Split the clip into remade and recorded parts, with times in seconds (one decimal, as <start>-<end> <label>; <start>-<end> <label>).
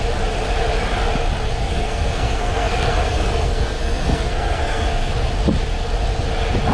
0.0-1.6 recorded; 1.6-5.1 remade; 5.1-6.7 recorded